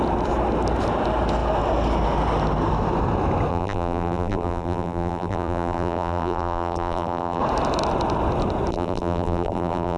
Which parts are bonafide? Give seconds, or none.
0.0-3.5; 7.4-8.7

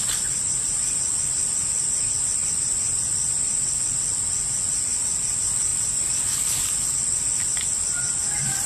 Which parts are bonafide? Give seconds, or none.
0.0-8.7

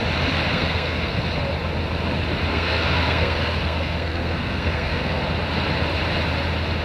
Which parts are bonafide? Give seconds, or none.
0.0-0.5; 1.2-2.5; 5.2-6.8

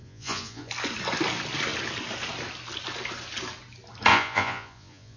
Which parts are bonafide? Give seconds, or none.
0.7-4.1

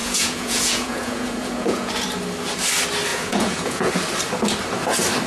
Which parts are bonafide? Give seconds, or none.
1.9-3.1; 3.9-5.3